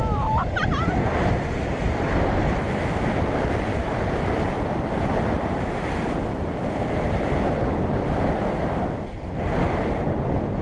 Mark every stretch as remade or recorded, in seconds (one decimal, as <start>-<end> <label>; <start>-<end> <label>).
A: 0.0-0.6 recorded; 0.6-2.4 remade; 2.4-3.7 recorded; 3.7-8.7 remade; 8.7-10.6 recorded